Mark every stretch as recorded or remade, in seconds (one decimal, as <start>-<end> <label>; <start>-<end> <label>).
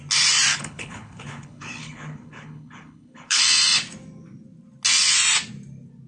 0.0-0.5 recorded; 0.5-3.4 remade; 3.4-6.1 recorded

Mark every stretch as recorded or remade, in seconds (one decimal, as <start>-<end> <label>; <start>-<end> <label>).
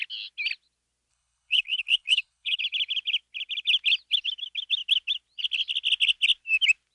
0.0-1.1 recorded; 1.1-2.6 remade; 2.6-6.9 recorded